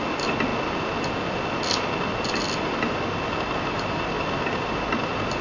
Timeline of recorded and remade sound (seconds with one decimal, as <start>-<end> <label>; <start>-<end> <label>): 0.0-5.4 recorded

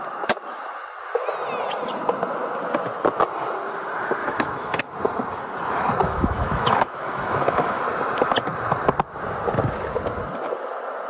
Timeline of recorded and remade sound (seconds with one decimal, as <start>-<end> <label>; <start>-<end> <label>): 0.0-4.2 recorded; 4.2-4.8 remade; 4.8-6.0 recorded; 6.0-7.8 remade; 7.8-11.1 recorded